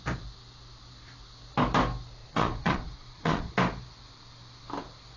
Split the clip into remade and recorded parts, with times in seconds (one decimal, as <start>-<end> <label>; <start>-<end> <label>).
0.0-2.2 recorded; 2.2-3.5 remade; 3.5-5.2 recorded